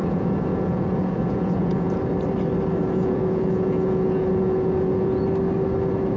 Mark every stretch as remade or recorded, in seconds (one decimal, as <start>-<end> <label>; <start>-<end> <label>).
0.0-2.0 remade; 2.0-2.8 recorded; 2.8-5.2 remade; 5.2-6.2 recorded